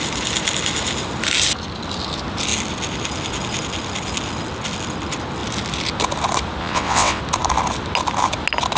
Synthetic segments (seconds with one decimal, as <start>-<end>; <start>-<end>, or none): 6.6-7.2